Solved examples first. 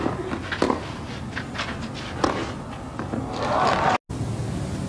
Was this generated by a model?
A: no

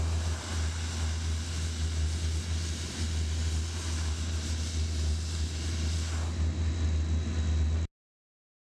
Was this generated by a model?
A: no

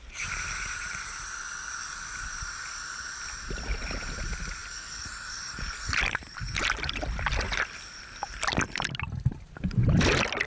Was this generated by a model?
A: no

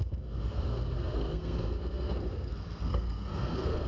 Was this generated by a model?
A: yes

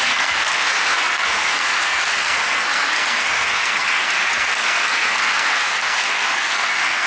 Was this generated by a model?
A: yes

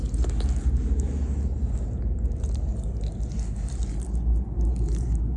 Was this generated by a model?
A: no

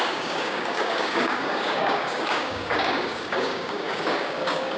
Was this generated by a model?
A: yes